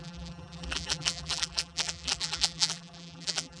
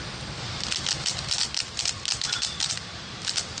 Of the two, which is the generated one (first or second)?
first